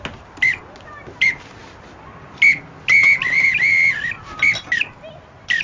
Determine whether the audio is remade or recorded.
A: recorded